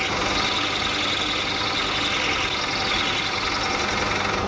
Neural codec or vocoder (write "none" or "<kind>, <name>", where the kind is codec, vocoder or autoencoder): none